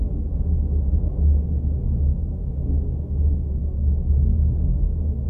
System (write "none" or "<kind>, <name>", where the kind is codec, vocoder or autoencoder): autoencoder, DAC-VAE